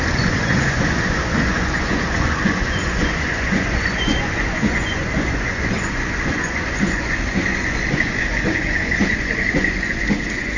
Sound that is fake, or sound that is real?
fake